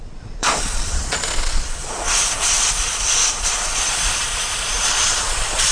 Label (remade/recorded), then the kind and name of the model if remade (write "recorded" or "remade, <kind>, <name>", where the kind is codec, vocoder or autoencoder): remade, vocoder, Vocos